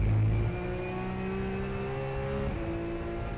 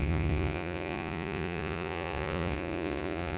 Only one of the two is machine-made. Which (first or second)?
second